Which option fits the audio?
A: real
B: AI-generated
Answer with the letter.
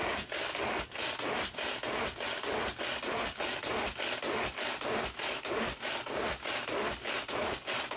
A